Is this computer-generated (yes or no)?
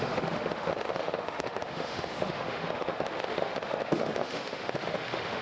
yes